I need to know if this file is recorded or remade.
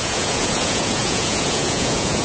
remade